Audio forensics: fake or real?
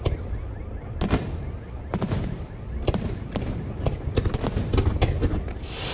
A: real